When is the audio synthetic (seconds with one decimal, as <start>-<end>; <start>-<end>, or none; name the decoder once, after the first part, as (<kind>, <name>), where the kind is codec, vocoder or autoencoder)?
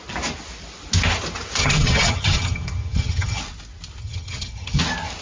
1.6-3.4 (vocoder, HiFi-GAN); 4.0-4.8